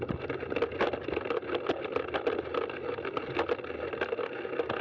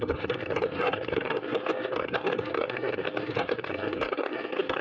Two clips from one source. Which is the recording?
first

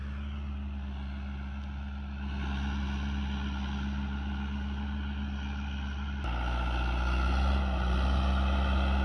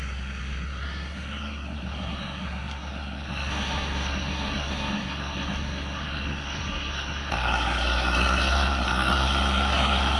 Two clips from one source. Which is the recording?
first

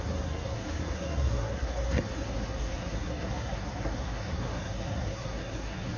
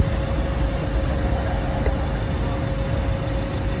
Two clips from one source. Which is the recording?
second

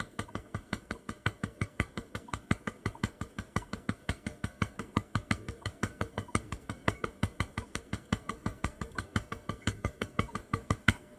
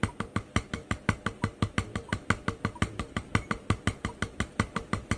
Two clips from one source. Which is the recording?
second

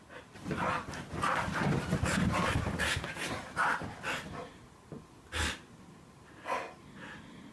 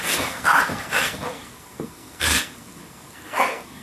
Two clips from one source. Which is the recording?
first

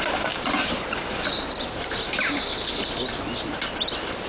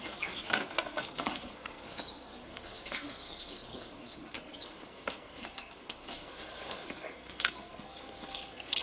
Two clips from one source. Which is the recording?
first